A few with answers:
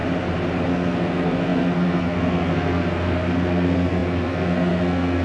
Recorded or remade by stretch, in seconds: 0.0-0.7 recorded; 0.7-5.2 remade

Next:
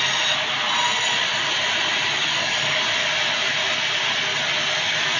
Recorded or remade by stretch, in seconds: 0.0-2.2 recorded; 2.2-2.8 remade; 2.8-5.2 recorded